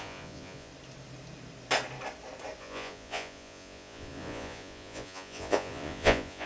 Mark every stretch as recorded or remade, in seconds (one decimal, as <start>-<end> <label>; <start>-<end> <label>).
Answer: 0.0-0.7 remade; 0.7-2.6 recorded; 2.6-6.5 remade